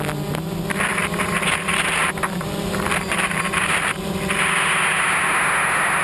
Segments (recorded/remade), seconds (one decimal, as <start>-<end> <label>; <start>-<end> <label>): 0.0-0.9 recorded; 0.9-4.5 remade; 4.5-6.0 recorded